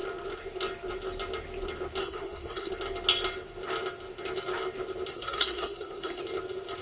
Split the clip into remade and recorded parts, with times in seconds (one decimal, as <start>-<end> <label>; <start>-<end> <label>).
0.0-2.0 recorded; 2.0-2.7 remade; 2.7-5.1 recorded; 5.1-6.2 remade; 6.2-6.8 recorded